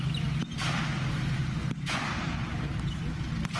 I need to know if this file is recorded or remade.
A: recorded